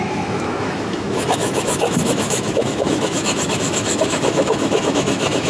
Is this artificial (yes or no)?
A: yes